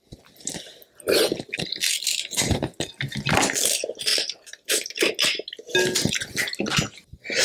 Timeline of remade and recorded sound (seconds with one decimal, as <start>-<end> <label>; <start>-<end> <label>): 0.0-4.1 recorded; 4.1-5.1 remade; 5.1-7.4 recorded